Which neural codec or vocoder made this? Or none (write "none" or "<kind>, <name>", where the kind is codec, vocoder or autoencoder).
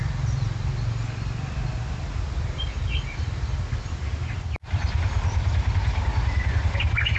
none